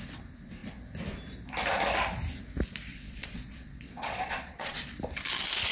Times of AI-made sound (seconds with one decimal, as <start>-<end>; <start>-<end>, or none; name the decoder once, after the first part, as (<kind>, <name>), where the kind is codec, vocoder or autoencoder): 2.9-4.8 (vocoder, Vocos)